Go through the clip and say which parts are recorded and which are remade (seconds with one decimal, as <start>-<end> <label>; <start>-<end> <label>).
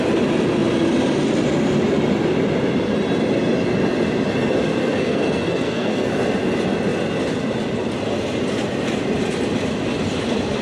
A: 0.0-4.8 recorded; 4.8-6.1 remade; 6.1-10.6 recorded